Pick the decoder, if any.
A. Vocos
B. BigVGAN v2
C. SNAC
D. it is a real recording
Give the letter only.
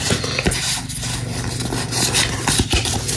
D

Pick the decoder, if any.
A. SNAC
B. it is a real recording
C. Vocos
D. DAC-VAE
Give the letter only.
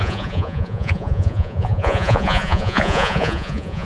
C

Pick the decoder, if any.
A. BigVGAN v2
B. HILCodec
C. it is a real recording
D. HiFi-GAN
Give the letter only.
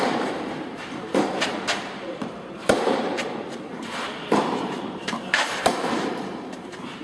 A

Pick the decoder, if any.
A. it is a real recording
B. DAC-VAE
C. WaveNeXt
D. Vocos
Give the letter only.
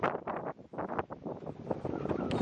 A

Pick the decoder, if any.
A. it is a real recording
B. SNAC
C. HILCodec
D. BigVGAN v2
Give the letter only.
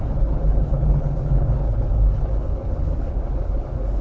C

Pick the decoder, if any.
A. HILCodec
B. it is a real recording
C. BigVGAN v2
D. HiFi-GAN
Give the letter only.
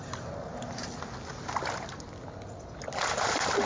B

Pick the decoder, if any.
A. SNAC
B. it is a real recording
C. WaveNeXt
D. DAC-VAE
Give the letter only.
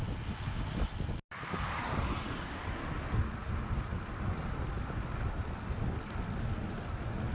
B